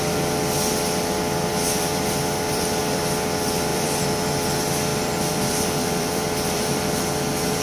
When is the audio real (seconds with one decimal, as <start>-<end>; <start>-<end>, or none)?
0.0-1.5; 2.8-3.7; 4.3-4.9; 6.9-7.6